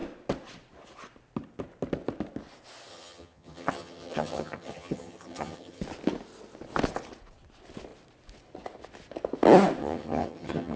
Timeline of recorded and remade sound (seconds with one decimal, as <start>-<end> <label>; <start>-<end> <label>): 0.0-2.9 recorded; 2.9-5.8 remade; 5.8-9.8 recorded; 9.8-10.8 remade